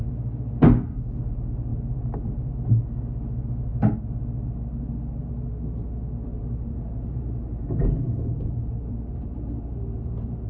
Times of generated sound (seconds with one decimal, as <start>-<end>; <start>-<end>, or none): 6.3-10.5